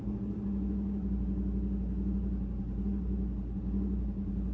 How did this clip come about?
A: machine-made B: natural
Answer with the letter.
B